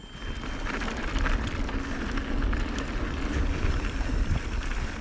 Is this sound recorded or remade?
recorded